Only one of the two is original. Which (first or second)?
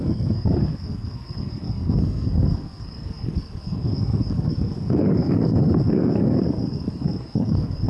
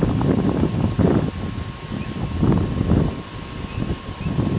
second